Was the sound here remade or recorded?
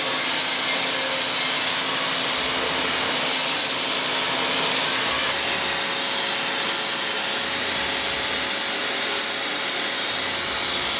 recorded